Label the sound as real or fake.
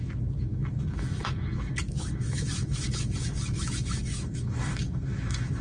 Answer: fake